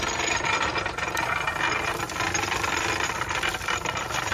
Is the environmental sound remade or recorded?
recorded